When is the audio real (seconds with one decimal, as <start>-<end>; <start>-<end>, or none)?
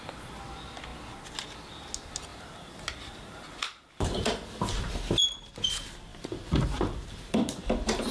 0.0-2.3; 4.9-6.1